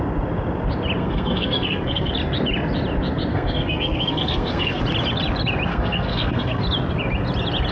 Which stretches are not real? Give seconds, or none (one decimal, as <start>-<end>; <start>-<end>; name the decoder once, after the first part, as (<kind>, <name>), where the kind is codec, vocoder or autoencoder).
1.0-2.1 (codec, SNAC); 3.3-4.8; 5.7-6.6